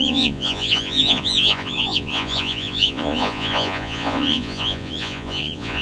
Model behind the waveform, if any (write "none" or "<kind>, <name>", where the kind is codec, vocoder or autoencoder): vocoder, Vocos